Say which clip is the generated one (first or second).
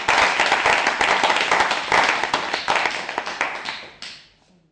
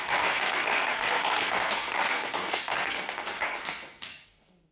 second